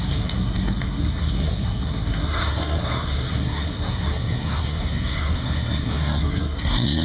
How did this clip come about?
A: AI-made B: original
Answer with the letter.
A